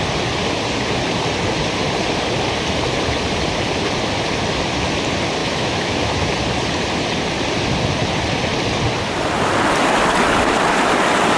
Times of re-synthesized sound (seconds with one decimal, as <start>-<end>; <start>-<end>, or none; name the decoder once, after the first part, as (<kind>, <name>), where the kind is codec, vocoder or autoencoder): 5.4-6.3 (autoencoder, DAC-VAE)